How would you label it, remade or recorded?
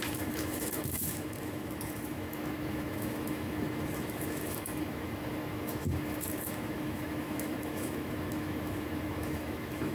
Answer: remade